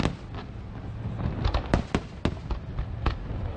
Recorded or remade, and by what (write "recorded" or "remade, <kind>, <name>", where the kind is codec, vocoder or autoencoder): recorded